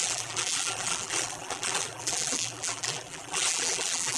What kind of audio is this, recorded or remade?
remade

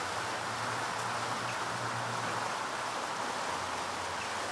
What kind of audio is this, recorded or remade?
recorded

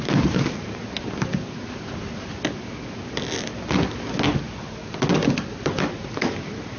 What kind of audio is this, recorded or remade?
recorded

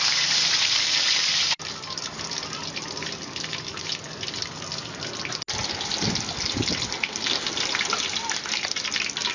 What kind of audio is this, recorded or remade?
recorded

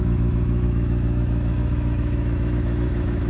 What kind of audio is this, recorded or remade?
remade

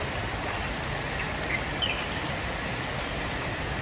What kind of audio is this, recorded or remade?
recorded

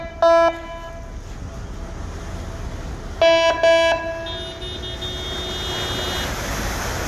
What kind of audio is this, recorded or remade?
recorded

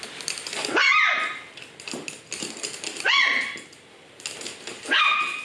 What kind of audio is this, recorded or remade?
recorded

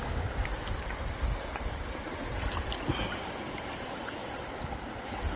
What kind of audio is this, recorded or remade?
recorded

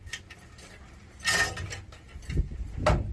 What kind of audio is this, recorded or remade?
recorded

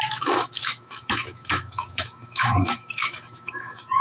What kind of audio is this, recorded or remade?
remade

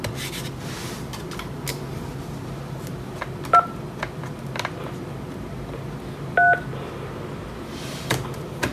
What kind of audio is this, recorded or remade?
recorded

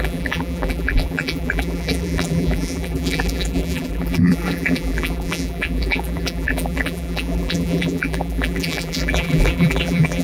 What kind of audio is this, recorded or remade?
remade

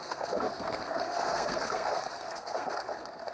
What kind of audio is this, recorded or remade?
remade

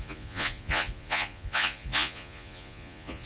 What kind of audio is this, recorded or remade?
remade